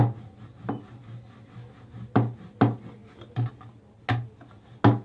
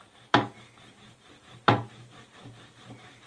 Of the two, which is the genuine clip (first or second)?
first